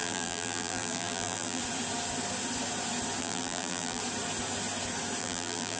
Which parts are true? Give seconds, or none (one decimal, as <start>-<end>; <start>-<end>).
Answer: 1.6-3.2; 4.0-5.2